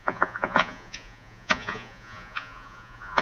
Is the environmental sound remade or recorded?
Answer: remade